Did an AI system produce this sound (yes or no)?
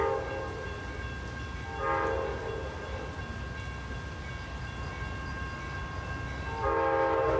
no